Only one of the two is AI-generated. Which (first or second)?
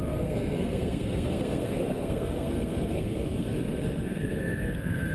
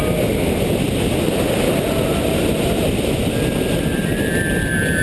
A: first